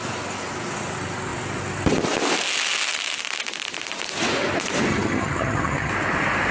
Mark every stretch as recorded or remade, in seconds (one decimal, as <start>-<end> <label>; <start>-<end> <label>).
0.0-4.9 recorded; 4.9-5.9 remade; 5.9-6.5 recorded